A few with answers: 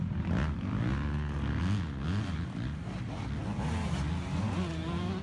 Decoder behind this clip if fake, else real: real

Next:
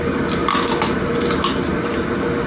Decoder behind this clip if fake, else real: real